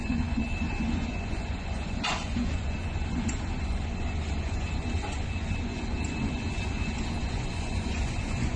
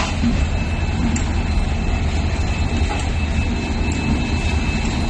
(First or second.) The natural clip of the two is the second